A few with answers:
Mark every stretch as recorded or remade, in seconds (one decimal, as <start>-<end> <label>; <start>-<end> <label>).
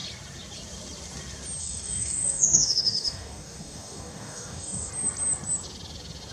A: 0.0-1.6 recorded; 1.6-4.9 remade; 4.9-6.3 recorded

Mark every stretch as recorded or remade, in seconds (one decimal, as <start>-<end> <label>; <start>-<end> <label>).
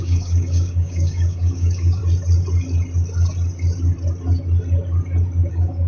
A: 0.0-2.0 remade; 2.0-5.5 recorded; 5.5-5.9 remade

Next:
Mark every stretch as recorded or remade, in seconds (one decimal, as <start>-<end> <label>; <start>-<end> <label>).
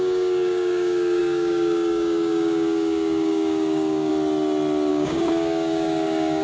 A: 0.0-4.1 remade; 4.1-4.9 recorded; 4.9-6.4 remade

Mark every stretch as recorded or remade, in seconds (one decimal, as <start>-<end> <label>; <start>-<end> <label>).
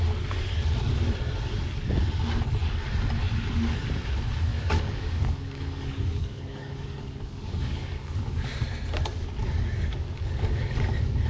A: 0.0-4.5 recorded; 4.5-8.6 remade; 8.6-9.4 recorded; 9.4-10.9 remade; 10.9-11.3 recorded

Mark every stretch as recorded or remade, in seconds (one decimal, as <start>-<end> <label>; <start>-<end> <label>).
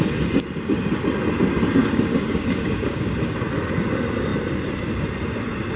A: 0.0-1.8 recorded; 1.8-3.4 remade; 3.4-5.8 recorded